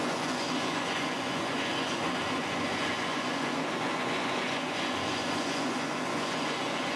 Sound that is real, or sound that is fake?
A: fake